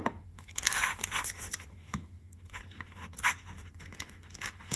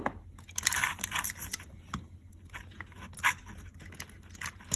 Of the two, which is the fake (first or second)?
first